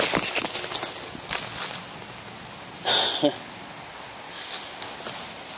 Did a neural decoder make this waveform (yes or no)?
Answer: no